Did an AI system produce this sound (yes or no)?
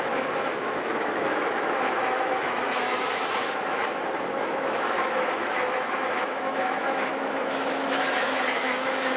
yes